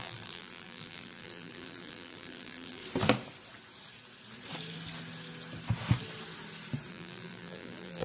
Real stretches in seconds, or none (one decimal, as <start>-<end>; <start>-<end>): 2.8-6.9